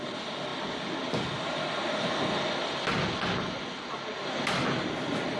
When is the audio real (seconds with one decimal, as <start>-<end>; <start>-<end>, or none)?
0.0-5.4